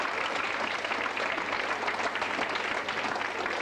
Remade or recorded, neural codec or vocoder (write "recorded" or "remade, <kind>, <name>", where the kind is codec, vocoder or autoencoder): recorded